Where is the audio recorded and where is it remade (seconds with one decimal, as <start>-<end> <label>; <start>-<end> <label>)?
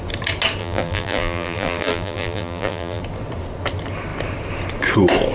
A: 0.0-0.6 recorded; 0.6-3.0 remade; 3.0-5.3 recorded